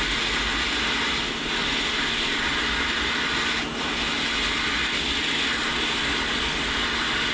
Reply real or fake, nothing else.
real